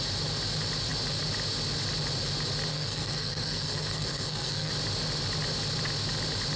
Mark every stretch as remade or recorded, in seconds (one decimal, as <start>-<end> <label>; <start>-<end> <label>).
0.0-2.7 recorded; 2.7-4.7 remade; 4.7-6.6 recorded